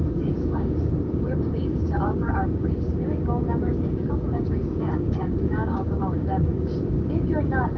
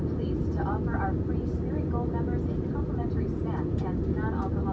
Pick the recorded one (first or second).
second